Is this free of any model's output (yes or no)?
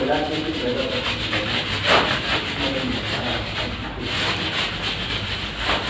yes